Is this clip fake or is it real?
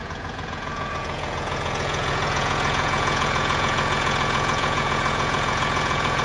fake